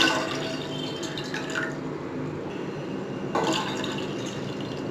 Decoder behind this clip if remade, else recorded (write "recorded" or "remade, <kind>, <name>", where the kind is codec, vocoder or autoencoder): recorded